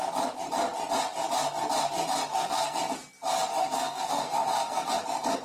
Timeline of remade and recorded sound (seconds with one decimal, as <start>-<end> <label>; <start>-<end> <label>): 0.0-2.3 recorded; 2.3-2.8 remade; 2.8-3.5 recorded; 3.5-4.9 remade; 4.9-5.4 recorded